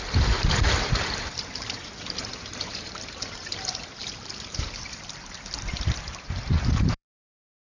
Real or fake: fake